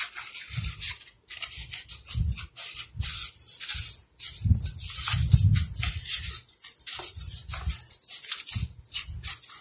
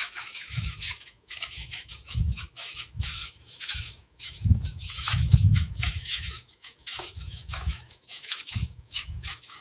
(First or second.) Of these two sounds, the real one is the first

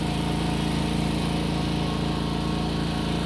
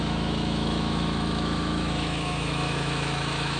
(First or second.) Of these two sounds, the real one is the first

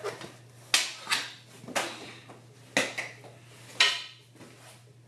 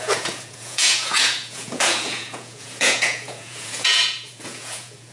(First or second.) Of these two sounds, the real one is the first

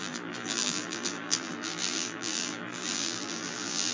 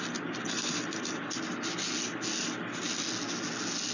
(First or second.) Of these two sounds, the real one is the second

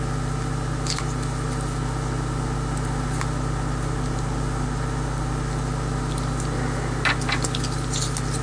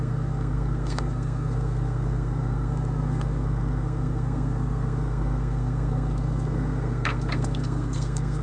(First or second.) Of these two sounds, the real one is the first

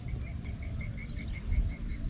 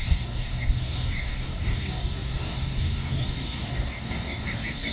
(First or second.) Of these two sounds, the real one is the first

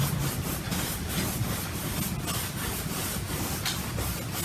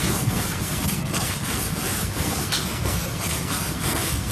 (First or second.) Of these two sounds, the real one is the first